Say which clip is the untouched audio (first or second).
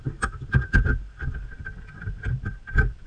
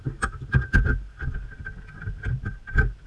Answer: second